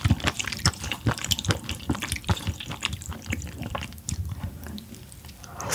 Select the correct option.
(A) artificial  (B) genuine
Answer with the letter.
A